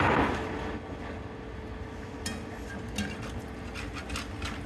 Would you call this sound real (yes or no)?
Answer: yes